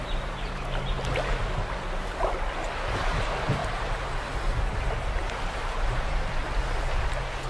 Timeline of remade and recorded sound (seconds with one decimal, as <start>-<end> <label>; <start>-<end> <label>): 0.0-7.5 recorded